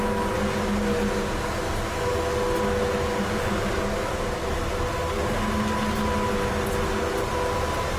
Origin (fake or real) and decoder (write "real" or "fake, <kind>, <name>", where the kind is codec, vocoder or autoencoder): real